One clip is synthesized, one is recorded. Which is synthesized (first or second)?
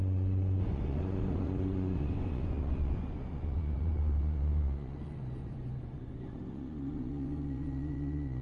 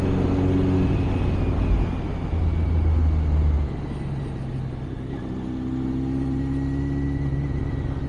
first